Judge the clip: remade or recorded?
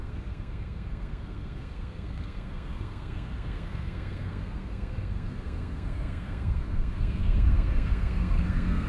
remade